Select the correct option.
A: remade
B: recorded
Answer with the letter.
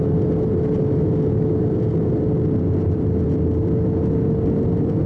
B